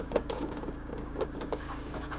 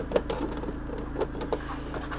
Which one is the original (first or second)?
second